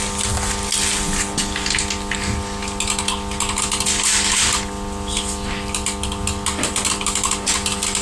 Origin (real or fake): real